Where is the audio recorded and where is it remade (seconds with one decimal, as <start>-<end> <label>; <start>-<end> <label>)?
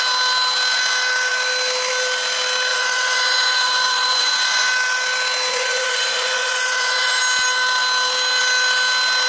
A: 0.0-2.7 recorded; 2.7-4.7 remade; 4.7-5.5 recorded; 5.5-7.2 remade; 7.2-9.3 recorded